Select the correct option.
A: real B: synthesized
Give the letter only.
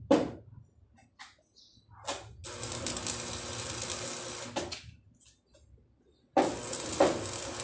A